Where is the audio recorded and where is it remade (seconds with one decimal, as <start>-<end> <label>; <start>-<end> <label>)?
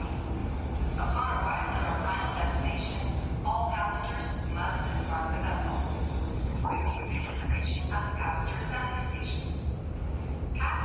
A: 0.0-6.3 recorded; 6.3-7.8 remade; 7.8-10.8 recorded